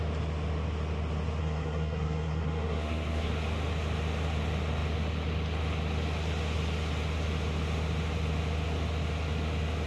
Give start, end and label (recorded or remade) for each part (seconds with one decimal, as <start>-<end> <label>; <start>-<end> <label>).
0.0-1.4 recorded; 1.4-3.3 remade; 3.3-9.9 recorded